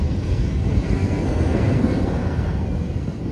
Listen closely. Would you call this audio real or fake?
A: fake